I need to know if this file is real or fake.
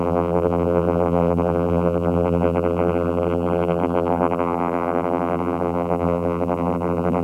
fake